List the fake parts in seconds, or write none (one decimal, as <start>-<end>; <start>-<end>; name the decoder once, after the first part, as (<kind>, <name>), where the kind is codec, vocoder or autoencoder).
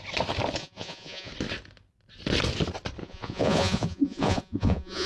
0.6-1.3 (vocoder, Vocos); 3.0-5.1